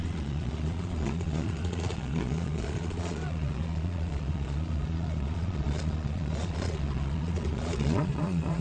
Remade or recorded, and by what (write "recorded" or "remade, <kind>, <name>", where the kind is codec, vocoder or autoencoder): remade, vocoder, Vocos